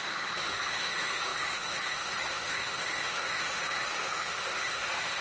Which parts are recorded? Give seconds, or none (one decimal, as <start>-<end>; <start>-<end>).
none